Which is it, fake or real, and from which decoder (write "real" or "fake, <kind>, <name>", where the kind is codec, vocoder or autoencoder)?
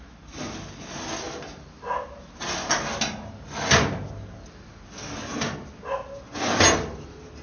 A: real